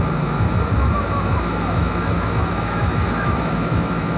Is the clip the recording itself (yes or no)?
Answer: no